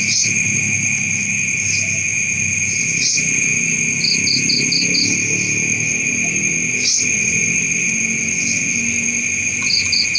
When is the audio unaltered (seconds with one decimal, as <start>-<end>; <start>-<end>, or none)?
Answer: 0.0-10.2

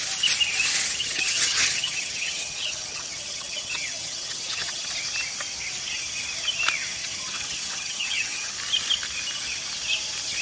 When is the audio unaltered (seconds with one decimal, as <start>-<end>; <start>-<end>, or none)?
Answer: 0.0-1.0; 4.9-7.0; 8.5-10.4